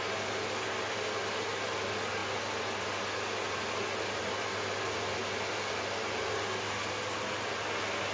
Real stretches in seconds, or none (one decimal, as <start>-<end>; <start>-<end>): 0.0-8.1